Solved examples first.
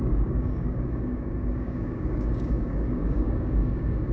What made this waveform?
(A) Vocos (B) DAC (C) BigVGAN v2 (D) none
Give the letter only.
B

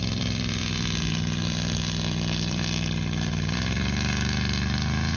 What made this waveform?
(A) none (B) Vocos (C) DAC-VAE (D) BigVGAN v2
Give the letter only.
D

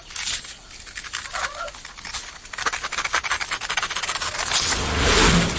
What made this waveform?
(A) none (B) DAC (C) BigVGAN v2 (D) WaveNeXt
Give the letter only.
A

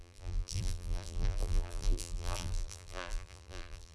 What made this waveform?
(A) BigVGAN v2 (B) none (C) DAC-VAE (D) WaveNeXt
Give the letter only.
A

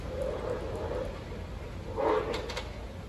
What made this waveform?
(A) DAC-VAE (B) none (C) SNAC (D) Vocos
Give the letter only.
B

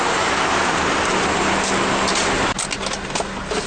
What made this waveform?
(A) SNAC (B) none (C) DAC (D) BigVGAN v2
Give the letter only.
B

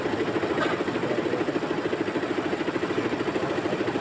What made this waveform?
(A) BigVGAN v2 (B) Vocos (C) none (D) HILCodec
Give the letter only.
A